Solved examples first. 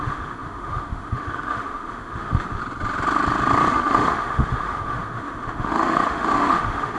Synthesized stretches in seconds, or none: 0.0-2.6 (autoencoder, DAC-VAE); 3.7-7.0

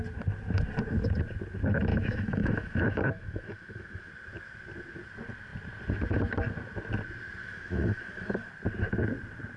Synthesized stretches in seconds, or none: 1.9-4.1 (autoencoder, DAC-VAE); 7.4-8.5